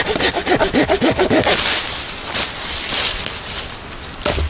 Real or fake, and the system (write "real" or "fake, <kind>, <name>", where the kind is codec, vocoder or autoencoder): real